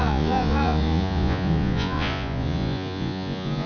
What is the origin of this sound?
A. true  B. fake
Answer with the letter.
B